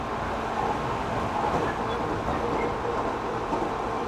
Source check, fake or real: real